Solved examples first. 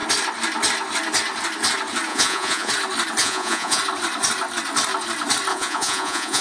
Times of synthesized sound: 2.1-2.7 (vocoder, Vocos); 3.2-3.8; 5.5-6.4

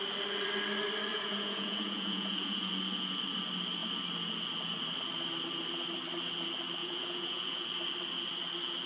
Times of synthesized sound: 1.1-2.7 (vocoder, Vocos); 6.8-7.7